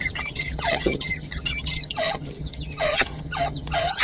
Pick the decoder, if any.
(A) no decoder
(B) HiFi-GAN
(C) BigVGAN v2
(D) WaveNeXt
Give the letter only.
B